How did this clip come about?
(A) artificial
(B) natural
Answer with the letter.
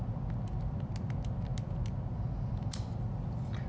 B